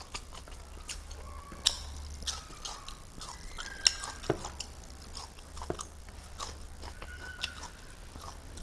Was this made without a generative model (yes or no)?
yes